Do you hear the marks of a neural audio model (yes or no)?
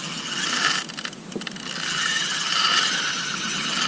no